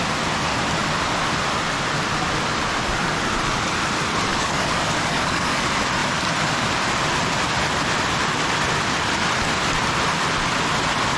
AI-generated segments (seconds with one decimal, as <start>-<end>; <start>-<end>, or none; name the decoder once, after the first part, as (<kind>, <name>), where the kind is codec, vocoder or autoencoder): 4.3-5.6 (codec, DAC)